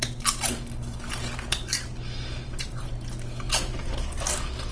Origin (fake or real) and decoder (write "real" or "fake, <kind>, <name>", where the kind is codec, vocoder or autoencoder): real